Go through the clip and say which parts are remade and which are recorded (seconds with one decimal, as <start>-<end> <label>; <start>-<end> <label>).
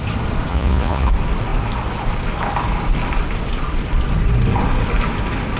0.0-0.5 recorded; 0.5-1.1 remade; 1.1-5.6 recorded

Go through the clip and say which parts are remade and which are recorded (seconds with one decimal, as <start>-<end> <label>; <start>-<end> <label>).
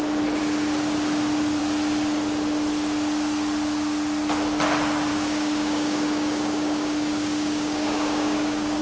0.0-5.1 recorded; 5.1-8.8 remade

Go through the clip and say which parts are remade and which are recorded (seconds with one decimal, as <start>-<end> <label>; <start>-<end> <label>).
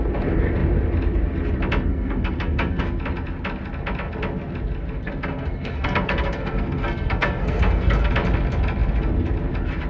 0.0-1.9 recorded; 1.9-2.8 remade; 2.8-5.0 recorded; 5.0-8.1 remade; 8.1-9.9 recorded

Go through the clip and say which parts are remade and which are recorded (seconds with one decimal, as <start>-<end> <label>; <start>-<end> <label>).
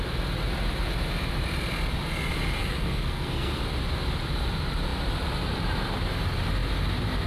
0.0-2.6 recorded; 2.6-3.6 remade; 3.6-7.3 recorded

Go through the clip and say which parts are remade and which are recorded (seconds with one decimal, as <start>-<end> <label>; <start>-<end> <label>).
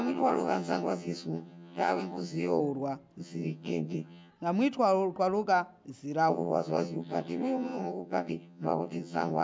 0.0-2.6 remade; 2.6-3.2 recorded; 3.2-4.3 remade; 4.3-6.3 recorded; 6.3-9.4 remade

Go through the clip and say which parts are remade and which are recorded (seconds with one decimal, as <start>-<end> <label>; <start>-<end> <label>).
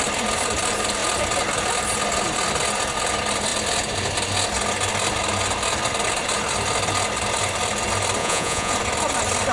0.0-8.2 recorded; 8.2-8.7 remade; 8.7-9.5 recorded